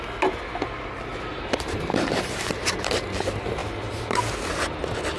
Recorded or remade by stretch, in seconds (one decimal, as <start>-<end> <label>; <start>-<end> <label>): 0.0-1.1 recorded; 1.1-2.6 remade; 2.6-3.6 recorded; 3.6-4.3 remade; 4.3-5.2 recorded